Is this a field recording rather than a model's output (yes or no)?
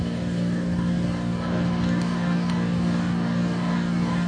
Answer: no